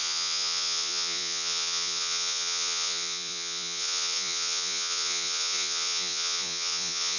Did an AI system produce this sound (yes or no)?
yes